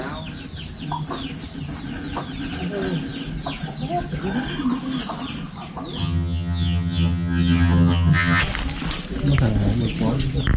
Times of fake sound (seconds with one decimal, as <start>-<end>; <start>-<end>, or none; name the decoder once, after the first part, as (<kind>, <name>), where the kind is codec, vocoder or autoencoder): 6.0-8.4 (vocoder, HiFi-GAN)